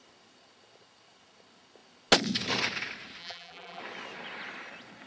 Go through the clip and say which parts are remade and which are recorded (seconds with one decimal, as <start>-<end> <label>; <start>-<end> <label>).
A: 0.0-3.2 recorded; 3.2-3.8 remade; 3.8-5.1 recorded